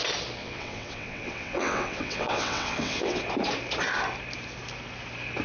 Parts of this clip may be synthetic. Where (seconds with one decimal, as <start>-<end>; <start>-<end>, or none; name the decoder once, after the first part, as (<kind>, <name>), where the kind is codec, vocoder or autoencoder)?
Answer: 0.4-3.2 (vocoder, WaveNeXt)